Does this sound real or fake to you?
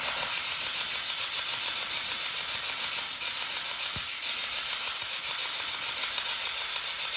real